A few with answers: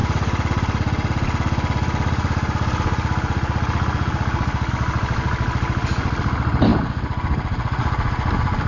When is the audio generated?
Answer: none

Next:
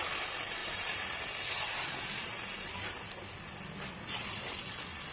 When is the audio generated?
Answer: 0.6-1.2